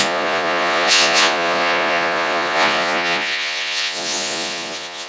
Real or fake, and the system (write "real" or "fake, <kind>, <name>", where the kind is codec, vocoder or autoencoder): fake, vocoder, Vocos